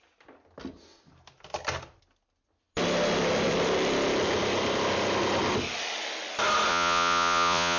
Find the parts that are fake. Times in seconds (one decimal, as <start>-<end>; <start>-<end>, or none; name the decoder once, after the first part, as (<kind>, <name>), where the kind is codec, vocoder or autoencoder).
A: 6.7-7.8 (vocoder, Vocos)